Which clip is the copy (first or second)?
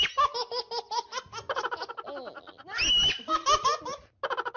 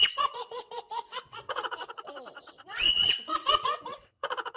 second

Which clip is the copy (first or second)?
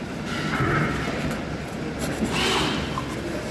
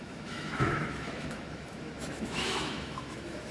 second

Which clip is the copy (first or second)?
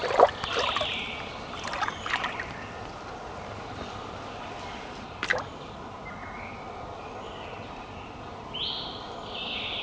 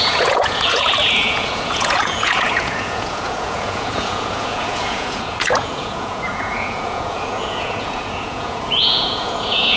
second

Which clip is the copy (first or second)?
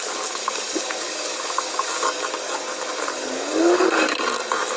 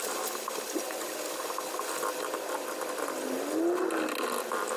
first